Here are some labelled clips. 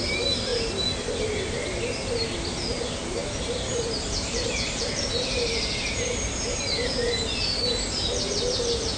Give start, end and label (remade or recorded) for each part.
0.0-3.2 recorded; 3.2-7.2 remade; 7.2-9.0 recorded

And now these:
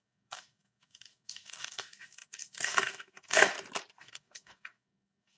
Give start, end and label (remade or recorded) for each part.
0.0-3.5 remade; 3.5-4.0 recorded; 4.0-5.4 remade

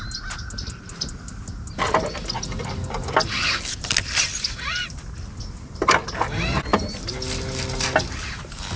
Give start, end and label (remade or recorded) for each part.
0.0-8.8 recorded

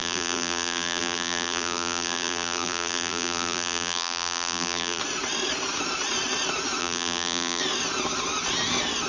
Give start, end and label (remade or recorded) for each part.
0.0-5.0 remade; 5.0-6.8 recorded; 6.8-7.6 remade; 7.6-9.1 recorded

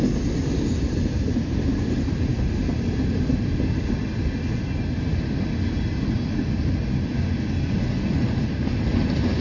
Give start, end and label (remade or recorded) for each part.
0.0-9.4 recorded